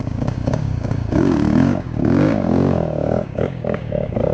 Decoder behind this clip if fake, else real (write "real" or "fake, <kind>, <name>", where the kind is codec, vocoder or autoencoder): fake, codec, DAC